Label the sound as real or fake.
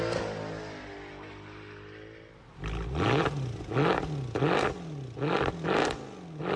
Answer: real